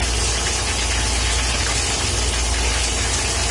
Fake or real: real